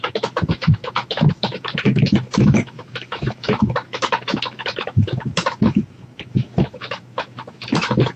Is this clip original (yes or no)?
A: no